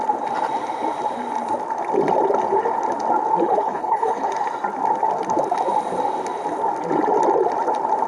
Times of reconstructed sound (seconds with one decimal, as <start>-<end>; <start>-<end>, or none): 3.4-4.3